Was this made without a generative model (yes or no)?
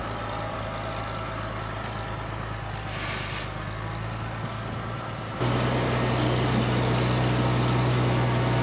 yes